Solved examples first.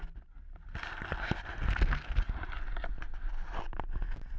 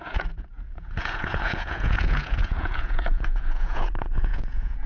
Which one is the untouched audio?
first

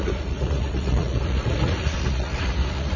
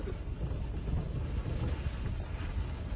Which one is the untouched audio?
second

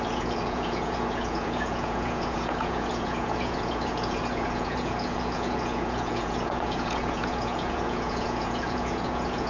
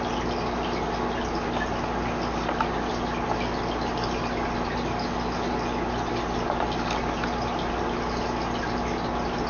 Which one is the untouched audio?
second